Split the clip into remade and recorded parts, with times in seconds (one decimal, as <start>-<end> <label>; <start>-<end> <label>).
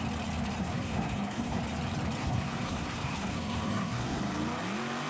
0.0-0.6 recorded; 0.6-1.6 remade; 1.6-2.2 recorded; 2.2-4.2 remade; 4.2-5.1 recorded